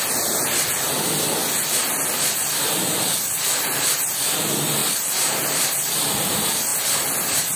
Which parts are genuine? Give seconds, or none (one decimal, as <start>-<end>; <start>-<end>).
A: 0.0-1.4; 3.8-4.8; 6.2-6.7

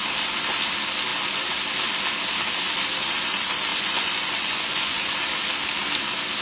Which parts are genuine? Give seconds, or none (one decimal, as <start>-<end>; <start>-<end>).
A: 0.0-3.7; 5.1-6.4

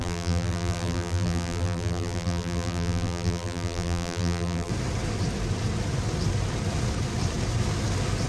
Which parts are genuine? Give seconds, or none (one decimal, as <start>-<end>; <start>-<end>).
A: 4.7-8.3

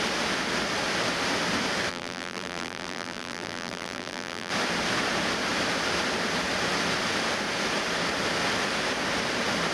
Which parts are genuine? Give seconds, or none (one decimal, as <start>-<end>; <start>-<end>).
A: 0.0-1.9; 4.5-9.7

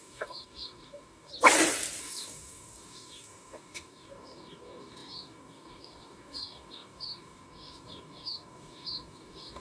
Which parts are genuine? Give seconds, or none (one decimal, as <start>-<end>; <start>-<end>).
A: 1.3-2.0